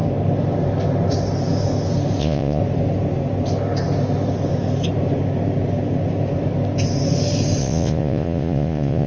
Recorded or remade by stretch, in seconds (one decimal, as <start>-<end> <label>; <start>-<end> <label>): 0.0-2.2 recorded; 2.2-2.6 remade; 2.6-7.6 recorded; 7.6-9.1 remade

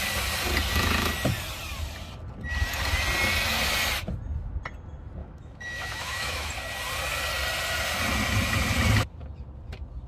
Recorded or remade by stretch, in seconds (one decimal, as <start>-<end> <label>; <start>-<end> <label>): 0.0-5.2 recorded; 5.2-6.5 remade; 6.5-10.1 recorded

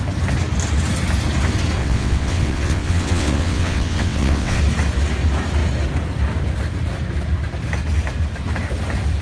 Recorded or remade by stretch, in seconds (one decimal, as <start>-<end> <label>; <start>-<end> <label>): 0.0-1.8 recorded; 1.8-4.6 remade; 4.6-9.2 recorded

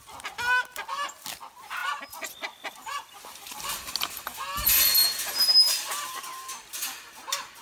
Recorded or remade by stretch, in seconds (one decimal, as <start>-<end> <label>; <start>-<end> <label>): 0.0-1.8 recorded; 1.8-3.9 remade; 3.9-7.6 recorded